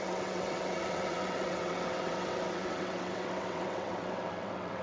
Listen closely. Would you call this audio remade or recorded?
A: remade